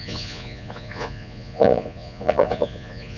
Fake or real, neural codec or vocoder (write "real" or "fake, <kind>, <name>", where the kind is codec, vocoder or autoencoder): fake, vocoder, Vocos